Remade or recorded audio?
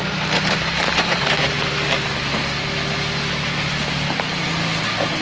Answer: recorded